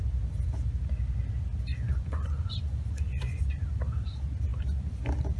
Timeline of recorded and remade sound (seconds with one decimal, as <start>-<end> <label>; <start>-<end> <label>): 0.0-1.7 recorded; 1.7-3.4 remade; 3.4-5.4 recorded